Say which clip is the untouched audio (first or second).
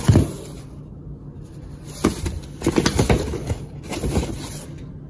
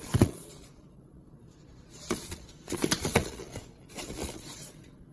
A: first